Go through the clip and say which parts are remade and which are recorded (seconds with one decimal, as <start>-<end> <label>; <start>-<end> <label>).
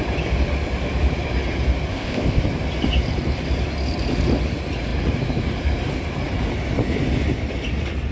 0.0-1.9 recorded; 1.9-2.4 remade; 2.4-8.1 recorded